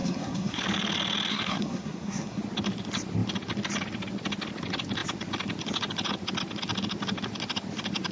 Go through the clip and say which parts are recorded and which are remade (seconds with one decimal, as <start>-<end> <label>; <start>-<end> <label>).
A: 0.0-0.6 remade; 0.6-1.3 recorded; 1.3-2.4 remade; 2.4-8.1 recorded